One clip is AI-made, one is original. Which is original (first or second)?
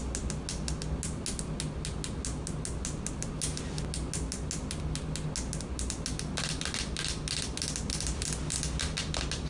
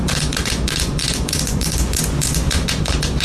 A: first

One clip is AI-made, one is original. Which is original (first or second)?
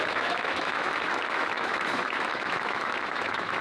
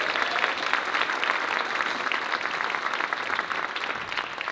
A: second